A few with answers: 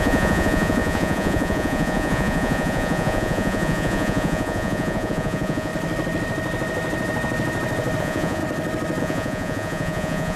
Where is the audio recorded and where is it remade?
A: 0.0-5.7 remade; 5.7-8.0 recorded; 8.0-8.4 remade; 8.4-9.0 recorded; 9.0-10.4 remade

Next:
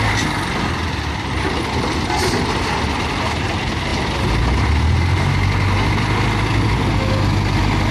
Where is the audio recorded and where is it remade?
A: 0.0-7.9 recorded

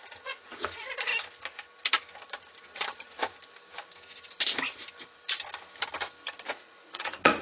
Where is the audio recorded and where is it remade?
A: 0.0-1.1 remade; 1.1-2.3 recorded; 2.3-3.3 remade; 3.3-6.5 recorded; 6.5-7.4 remade

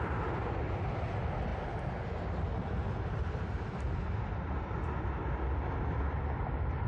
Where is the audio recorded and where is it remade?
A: 0.0-6.9 recorded

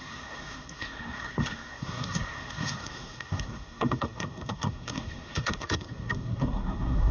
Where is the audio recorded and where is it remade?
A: 0.0-7.1 remade